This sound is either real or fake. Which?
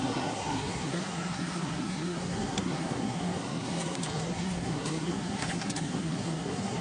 fake